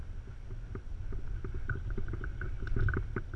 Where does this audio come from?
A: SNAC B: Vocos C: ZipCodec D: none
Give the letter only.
D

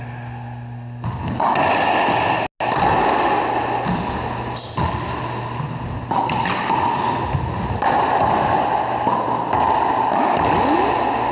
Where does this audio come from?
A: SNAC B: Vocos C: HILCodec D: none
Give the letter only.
D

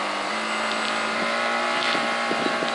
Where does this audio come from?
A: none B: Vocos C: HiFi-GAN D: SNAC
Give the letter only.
A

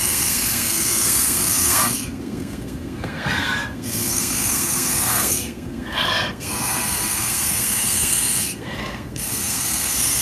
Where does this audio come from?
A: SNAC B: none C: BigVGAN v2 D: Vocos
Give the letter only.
A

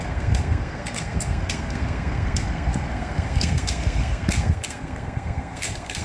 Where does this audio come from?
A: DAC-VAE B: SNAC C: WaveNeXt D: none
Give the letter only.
B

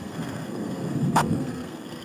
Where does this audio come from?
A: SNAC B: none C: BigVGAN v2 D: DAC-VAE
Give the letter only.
A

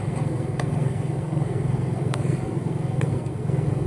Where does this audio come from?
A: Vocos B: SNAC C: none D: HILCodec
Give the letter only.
B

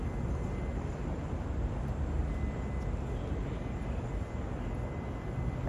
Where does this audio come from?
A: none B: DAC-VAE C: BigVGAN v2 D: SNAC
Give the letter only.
A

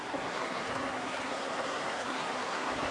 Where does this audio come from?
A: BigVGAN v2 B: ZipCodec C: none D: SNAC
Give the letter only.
D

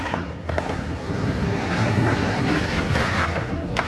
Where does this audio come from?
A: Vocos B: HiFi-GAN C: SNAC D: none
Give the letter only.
C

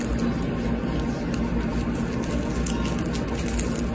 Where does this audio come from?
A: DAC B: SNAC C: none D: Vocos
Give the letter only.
C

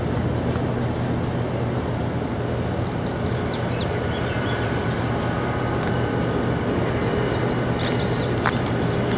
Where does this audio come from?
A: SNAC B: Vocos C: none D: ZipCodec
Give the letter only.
C